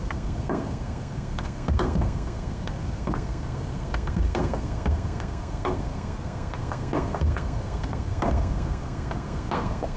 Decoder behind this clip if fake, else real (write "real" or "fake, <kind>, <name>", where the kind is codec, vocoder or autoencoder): fake, codec, SNAC